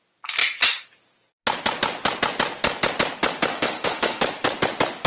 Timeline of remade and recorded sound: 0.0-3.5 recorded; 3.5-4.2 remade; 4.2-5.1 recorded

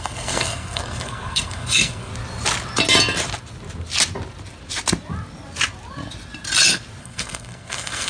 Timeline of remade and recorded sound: 0.0-2.1 remade; 2.1-7.0 recorded; 7.0-8.1 remade

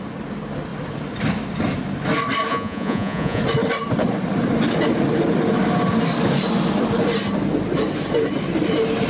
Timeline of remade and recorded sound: 0.0-2.5 recorded; 2.5-3.4 remade; 3.4-9.1 recorded

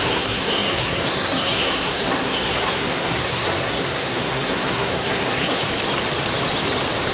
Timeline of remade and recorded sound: 0.0-5.7 remade; 5.7-7.1 recorded

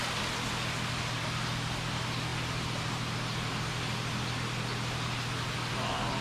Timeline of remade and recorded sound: 0.0-6.2 recorded

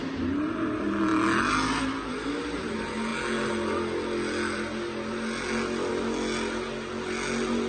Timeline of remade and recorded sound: 0.0-7.7 recorded

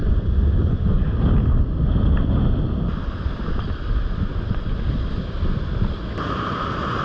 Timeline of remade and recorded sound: 0.0-1.0 remade; 1.0-7.0 recorded

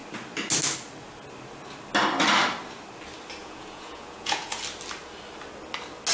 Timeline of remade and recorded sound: 0.0-3.4 recorded; 3.4-4.6 remade; 4.6-6.1 recorded